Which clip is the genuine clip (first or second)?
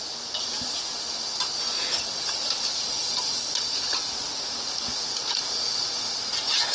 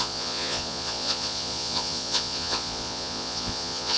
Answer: first